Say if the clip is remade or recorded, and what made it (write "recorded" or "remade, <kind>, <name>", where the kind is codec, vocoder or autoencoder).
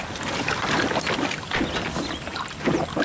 recorded